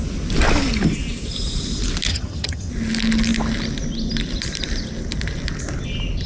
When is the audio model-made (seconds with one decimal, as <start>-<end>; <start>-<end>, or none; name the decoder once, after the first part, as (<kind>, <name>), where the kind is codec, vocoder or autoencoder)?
2.1-2.7 (vocoder, HiFi-GAN)